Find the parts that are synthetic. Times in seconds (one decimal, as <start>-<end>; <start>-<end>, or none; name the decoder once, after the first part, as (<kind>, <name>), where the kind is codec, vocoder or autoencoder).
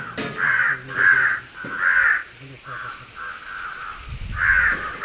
none